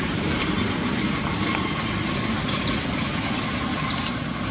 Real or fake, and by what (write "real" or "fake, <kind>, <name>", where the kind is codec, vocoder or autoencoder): real